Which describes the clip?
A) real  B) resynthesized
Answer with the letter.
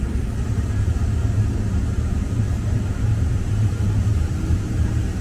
B